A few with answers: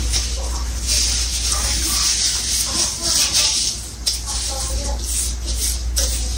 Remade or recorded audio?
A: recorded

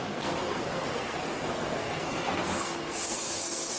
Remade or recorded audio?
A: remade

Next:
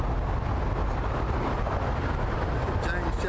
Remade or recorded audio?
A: recorded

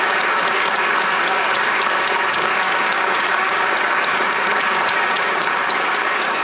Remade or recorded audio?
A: remade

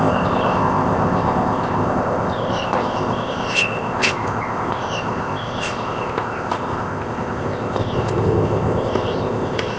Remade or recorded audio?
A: remade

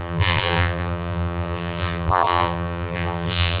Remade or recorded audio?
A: remade